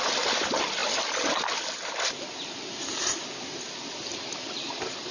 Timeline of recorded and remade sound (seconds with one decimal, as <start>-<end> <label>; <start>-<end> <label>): 0.0-5.1 recorded